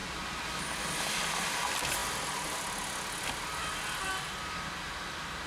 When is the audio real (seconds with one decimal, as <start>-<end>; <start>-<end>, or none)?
0.0-5.5